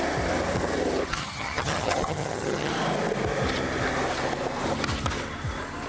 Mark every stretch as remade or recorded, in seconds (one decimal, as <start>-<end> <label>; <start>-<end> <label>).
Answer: 0.0-1.1 recorded; 1.1-2.7 remade; 2.7-5.9 recorded